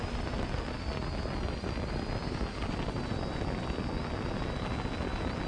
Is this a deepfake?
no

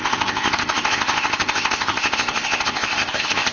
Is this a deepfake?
yes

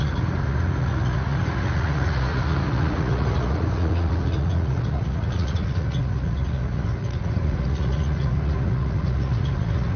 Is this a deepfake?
yes